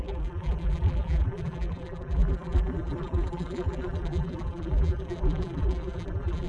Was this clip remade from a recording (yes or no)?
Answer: yes